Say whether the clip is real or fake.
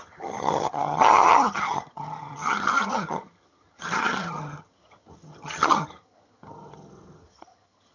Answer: fake